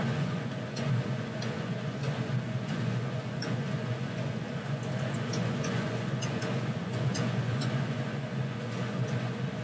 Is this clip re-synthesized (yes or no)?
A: yes